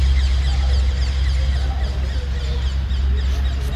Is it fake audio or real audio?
real